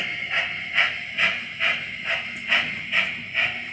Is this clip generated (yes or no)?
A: no